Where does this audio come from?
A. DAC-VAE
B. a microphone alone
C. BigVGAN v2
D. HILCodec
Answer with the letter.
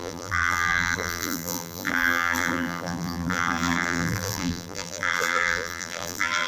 C